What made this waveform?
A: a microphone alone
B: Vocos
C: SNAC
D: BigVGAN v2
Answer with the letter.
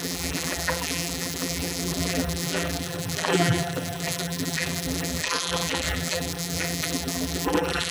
D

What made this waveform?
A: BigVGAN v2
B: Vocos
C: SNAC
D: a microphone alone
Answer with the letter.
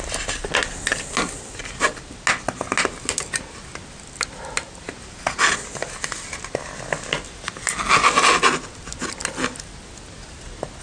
D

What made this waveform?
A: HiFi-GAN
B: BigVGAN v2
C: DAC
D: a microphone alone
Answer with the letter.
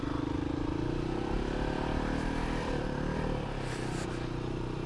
B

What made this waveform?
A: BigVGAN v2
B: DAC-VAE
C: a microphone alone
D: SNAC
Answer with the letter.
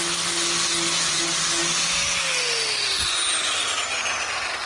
C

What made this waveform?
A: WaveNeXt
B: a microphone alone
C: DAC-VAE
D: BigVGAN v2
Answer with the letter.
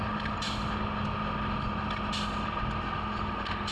B